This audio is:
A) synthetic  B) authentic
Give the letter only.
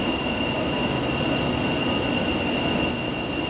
B